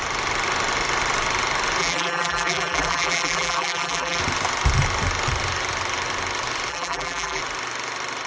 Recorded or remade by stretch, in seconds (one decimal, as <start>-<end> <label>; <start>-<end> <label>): 0.0-1.8 recorded; 1.8-4.2 remade; 4.2-6.7 recorded; 6.7-7.4 remade; 7.4-8.3 recorded